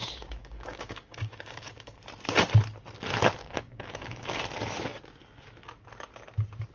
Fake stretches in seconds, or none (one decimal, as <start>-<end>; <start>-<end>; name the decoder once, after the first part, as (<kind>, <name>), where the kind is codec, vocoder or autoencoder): 0.0-2.0 (codec, DAC); 3.4-4.4